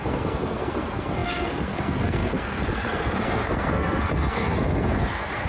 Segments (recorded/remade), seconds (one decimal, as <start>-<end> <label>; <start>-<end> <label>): 0.0-5.5 remade